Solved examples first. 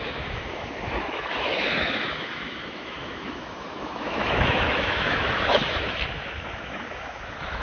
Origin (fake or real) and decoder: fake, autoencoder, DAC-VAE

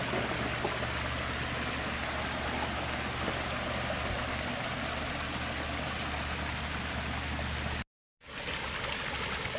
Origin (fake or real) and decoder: real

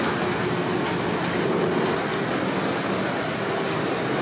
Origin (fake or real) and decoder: real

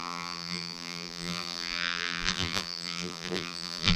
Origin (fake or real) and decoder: fake, vocoder, BigVGAN v2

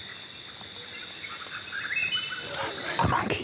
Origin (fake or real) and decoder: real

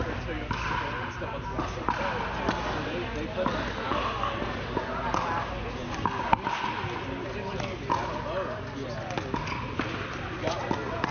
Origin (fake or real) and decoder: real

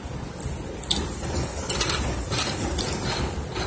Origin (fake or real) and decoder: real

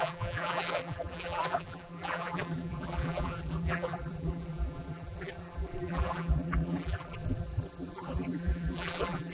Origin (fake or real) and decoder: fake, vocoder, BigVGAN v2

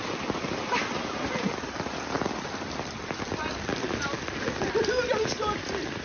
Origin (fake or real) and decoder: fake, vocoder, BigVGAN v2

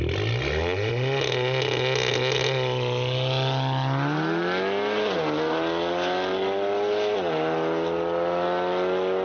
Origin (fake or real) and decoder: real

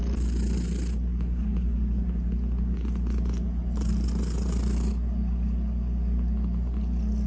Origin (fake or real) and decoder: real